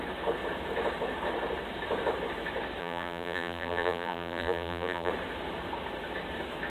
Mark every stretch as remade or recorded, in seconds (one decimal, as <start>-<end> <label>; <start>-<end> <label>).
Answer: 0.0-2.8 recorded; 2.8-5.1 remade; 5.1-6.7 recorded